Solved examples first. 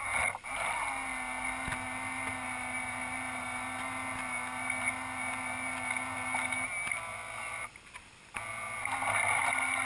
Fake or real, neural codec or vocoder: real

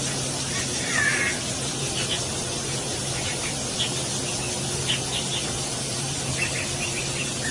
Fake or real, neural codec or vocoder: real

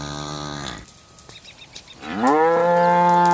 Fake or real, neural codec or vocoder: real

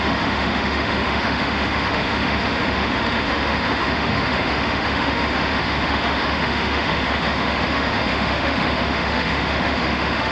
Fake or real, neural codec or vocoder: fake, autoencoder, DAC-VAE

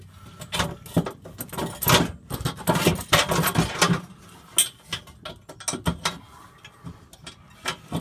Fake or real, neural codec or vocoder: real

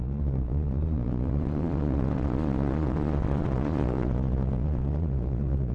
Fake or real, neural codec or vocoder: fake, vocoder, Vocos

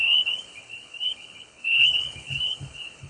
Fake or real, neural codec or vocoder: fake, codec, HILCodec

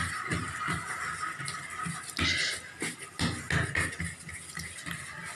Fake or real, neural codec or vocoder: real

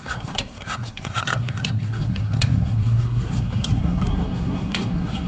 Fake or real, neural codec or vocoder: fake, codec, SNAC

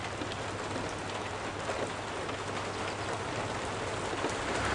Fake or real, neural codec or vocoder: real